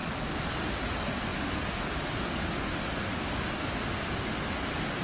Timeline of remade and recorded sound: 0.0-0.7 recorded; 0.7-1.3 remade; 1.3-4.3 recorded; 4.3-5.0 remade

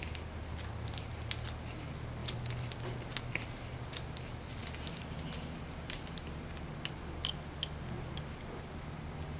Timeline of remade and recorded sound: 0.0-9.4 recorded

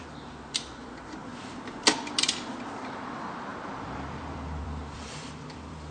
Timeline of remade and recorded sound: 0.0-1.3 remade; 1.3-2.8 recorded; 2.8-5.9 remade